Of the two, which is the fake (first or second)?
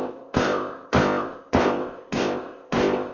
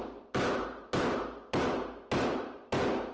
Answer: first